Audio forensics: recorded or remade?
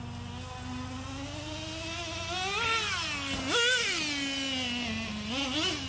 recorded